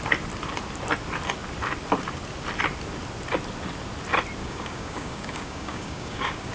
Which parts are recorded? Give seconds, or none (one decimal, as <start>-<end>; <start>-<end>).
0.0-4.4